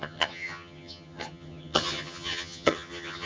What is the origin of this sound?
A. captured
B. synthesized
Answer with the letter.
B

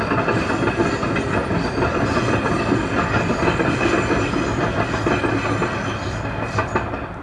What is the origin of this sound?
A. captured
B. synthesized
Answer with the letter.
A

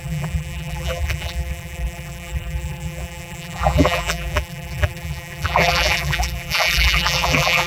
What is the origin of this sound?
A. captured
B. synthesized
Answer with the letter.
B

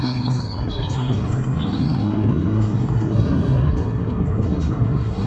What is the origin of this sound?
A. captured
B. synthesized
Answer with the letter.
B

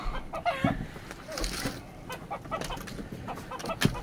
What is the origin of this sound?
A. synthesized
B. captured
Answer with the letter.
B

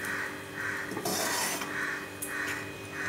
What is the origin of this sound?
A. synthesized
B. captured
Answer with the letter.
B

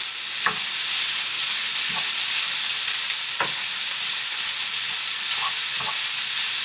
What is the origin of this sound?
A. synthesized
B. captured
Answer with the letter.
B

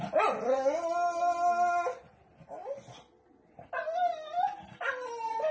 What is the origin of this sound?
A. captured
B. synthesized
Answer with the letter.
A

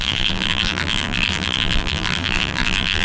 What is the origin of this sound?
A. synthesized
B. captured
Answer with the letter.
A